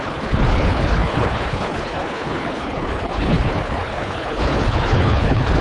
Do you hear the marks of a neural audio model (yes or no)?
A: yes